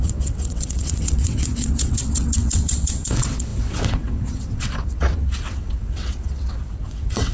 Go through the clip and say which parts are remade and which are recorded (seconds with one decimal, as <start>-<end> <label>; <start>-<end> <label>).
0.0-7.3 remade

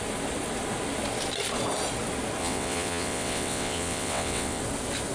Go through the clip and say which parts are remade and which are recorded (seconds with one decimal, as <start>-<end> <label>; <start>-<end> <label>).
0.0-2.4 recorded; 2.4-4.6 remade; 4.6-5.1 recorded

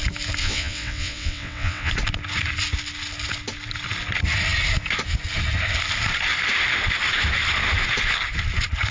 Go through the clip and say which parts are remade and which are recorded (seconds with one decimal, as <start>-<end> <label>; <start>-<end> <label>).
0.0-0.4 recorded; 0.4-1.9 remade; 1.9-8.9 recorded

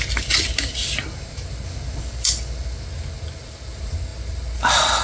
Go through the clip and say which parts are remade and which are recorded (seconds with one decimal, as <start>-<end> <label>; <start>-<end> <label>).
0.0-5.0 recorded

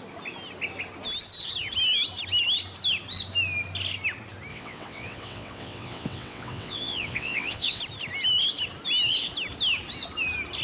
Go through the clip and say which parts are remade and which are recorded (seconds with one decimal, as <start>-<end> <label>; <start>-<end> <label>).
0.0-4.5 recorded; 4.5-7.8 remade; 7.8-10.6 recorded